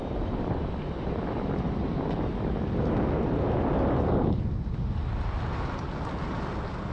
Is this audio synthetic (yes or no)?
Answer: no